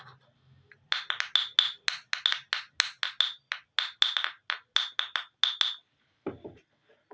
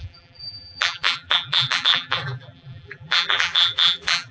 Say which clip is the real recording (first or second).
first